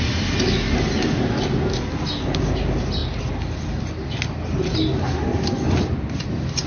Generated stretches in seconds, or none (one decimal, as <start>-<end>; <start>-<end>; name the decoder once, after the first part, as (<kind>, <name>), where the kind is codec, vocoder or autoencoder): none